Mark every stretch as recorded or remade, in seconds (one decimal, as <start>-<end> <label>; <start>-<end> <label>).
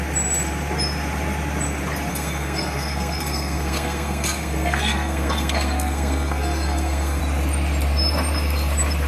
0.0-2.1 recorded; 2.1-7.2 remade; 7.2-9.1 recorded